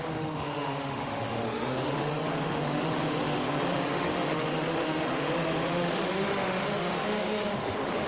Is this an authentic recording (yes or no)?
no